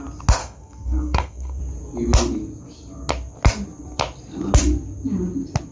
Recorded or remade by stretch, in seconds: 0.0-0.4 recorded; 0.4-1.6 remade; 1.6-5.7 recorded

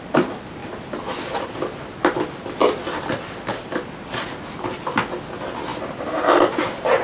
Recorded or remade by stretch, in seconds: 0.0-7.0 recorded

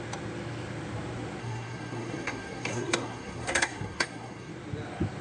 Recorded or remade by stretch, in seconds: 0.0-1.4 recorded; 1.4-4.5 remade; 4.5-5.2 recorded